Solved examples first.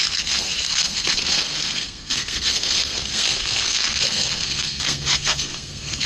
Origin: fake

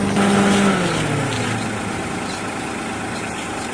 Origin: real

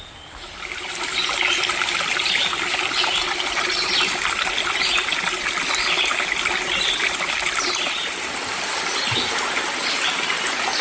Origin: real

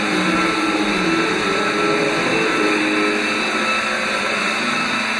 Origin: real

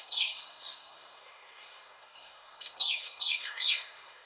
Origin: fake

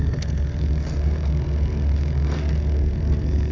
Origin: fake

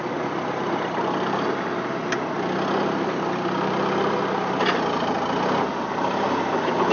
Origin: real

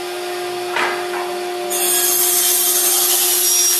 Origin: real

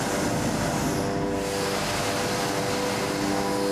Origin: real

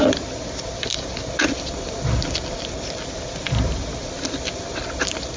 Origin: real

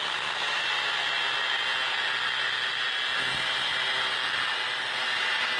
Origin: real